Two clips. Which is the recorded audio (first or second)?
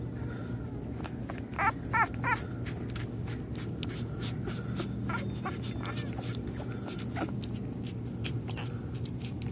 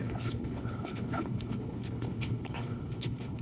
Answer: first